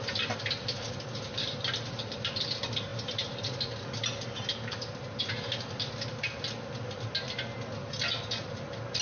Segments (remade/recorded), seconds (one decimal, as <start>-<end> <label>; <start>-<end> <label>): 0.0-9.0 recorded